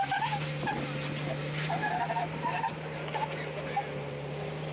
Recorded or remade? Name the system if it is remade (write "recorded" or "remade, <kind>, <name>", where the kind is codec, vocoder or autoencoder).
recorded